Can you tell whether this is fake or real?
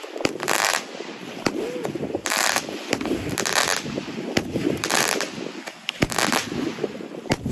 fake